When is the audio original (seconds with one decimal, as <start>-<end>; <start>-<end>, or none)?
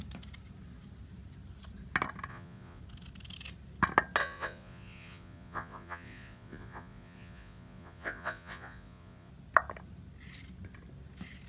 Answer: 0.0-2.3; 2.8-4.2; 9.3-11.5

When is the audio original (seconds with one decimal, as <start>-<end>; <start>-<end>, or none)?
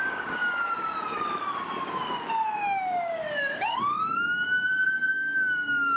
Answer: none